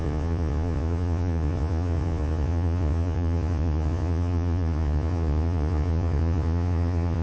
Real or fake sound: fake